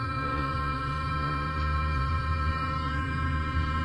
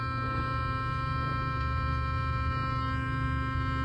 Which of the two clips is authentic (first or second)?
second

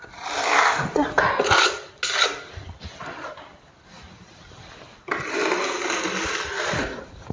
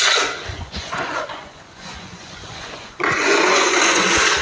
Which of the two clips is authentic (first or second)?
first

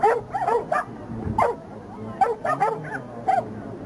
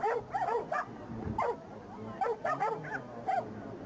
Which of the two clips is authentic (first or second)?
first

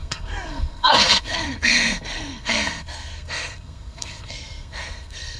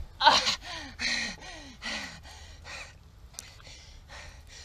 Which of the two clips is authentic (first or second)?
second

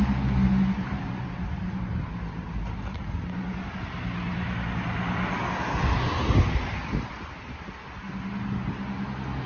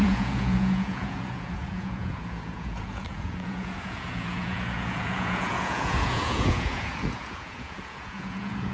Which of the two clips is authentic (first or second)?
first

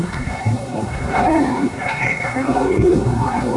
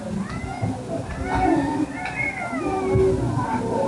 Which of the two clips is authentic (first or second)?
second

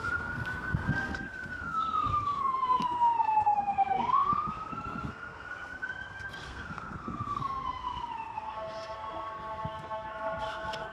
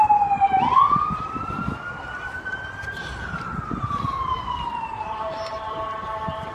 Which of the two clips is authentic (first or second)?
second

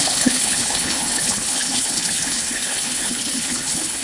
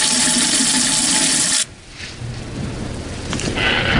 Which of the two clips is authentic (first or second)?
second